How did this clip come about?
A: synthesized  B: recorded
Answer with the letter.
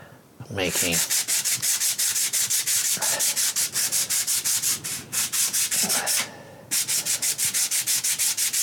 A